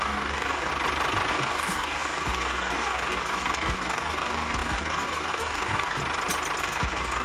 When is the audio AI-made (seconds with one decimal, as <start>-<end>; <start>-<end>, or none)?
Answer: 0.0-0.7; 1.3-6.0; 6.6-7.2